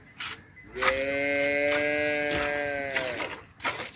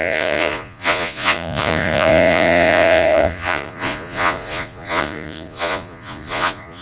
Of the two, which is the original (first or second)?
first